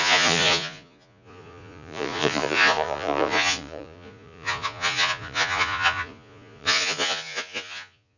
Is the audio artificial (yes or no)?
yes